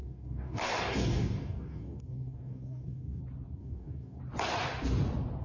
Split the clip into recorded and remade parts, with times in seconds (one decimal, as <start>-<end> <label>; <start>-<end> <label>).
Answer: 0.0-3.2 remade; 3.2-3.6 recorded; 3.6-4.2 remade; 4.2-5.4 recorded